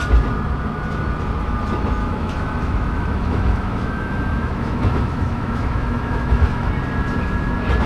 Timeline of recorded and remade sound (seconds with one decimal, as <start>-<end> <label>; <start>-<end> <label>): 0.0-2.0 recorded; 2.0-6.7 remade; 6.7-7.9 recorded

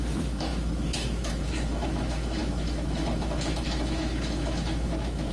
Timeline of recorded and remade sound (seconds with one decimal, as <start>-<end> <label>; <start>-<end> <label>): 0.0-5.3 remade

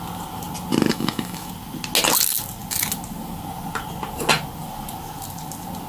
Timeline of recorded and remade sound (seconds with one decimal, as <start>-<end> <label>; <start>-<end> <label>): 0.0-0.9 recorded; 0.9-1.5 remade; 1.5-5.9 recorded